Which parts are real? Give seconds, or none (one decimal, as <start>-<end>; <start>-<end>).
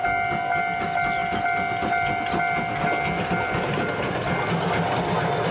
0.0-5.5